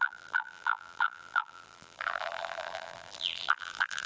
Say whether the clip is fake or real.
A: fake